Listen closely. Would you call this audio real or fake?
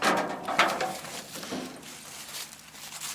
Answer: real